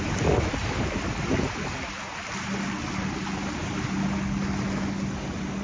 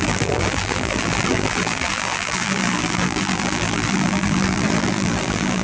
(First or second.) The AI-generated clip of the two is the second